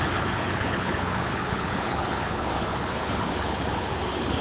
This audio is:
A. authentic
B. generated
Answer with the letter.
B